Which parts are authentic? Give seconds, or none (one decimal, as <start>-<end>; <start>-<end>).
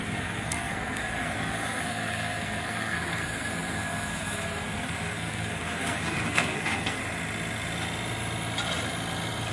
7.0-9.5